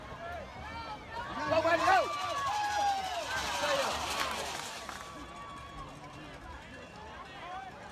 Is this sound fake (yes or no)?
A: no